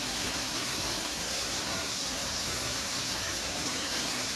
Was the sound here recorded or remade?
remade